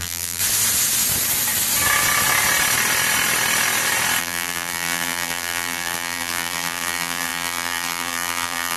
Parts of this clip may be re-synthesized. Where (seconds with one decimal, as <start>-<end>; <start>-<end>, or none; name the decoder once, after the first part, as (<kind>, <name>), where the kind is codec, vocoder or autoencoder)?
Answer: 0.0-0.4 (vocoder, BigVGAN v2); 4.2-8.8